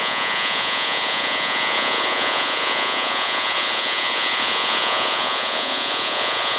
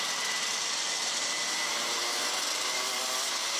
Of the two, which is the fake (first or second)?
first